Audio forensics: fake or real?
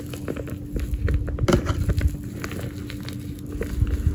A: real